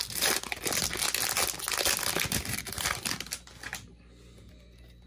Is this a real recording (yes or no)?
yes